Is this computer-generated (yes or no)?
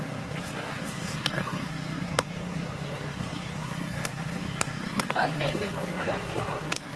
yes